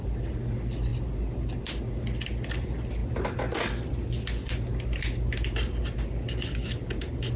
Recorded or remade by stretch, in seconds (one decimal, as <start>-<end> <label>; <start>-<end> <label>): 0.0-7.4 recorded

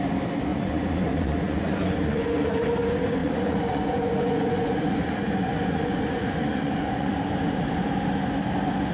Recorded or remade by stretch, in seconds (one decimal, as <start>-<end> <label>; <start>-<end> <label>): 0.0-0.5 recorded; 0.5-2.6 remade; 2.6-3.2 recorded; 3.2-7.2 remade; 7.2-8.9 recorded

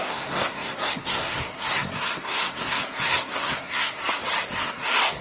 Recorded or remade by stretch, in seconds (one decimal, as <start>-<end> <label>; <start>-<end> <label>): 0.0-4.0 remade; 4.0-4.6 recorded; 4.6-5.2 remade

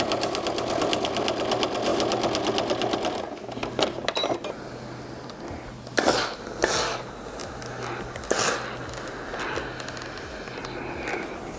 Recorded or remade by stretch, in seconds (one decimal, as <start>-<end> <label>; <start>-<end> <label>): 0.0-11.6 recorded

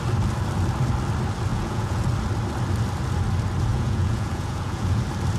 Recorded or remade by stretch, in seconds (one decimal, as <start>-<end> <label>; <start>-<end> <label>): 0.0-1.5 recorded; 1.5-2.0 remade; 2.0-3.7 recorded; 3.7-5.0 remade; 5.0-5.4 recorded

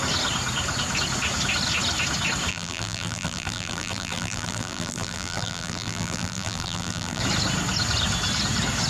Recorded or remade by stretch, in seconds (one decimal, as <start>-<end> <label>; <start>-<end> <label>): 0.0-2.5 recorded; 2.5-7.2 remade; 7.2-8.9 recorded

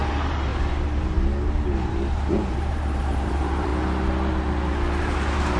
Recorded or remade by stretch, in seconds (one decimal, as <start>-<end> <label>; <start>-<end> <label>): 0.0-0.5 remade; 0.5-1.9 recorded; 1.9-3.7 remade; 3.7-5.0 recorded; 5.0-5.6 remade